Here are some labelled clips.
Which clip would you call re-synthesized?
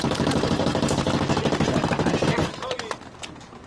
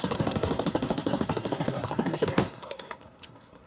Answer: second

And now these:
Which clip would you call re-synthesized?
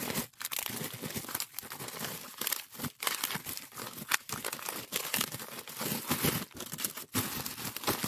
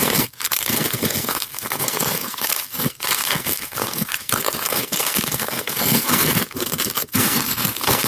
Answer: second